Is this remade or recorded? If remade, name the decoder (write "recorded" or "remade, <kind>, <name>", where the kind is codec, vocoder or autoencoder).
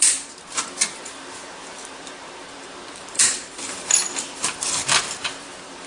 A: remade, vocoder, BigVGAN v2